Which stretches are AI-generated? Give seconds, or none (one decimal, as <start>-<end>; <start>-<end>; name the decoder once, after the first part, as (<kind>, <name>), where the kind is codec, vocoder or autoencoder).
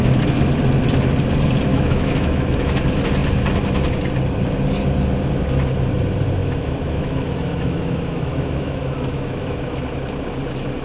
1.7-2.8 (autoencoder, DAC-VAE); 6.4-9.8